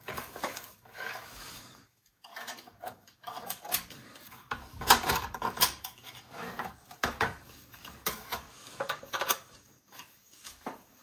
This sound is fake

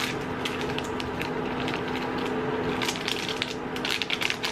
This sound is real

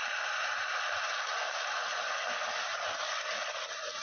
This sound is real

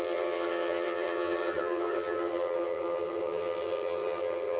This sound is fake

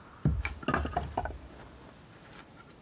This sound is real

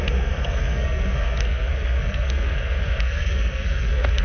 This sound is fake